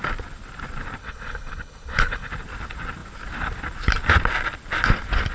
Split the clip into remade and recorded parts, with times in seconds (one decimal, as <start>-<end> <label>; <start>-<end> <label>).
0.0-1.0 recorded; 1.0-2.3 remade; 2.3-5.3 recorded